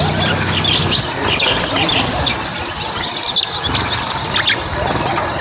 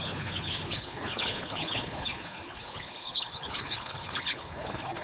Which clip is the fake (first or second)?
second